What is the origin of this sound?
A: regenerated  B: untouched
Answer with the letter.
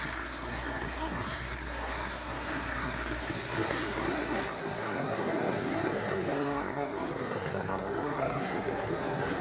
A